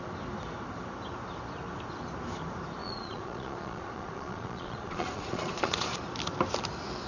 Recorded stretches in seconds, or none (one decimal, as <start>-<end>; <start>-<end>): 0.0-2.8; 6.0-7.1